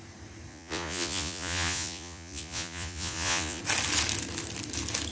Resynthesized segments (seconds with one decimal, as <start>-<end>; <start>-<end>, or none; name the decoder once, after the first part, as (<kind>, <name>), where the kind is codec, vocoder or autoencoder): 0.5-3.6 (vocoder, Vocos)